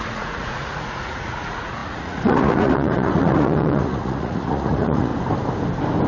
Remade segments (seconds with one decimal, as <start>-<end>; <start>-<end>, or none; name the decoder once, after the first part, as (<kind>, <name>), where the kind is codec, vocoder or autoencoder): 0.0-5.1 (vocoder, Vocos)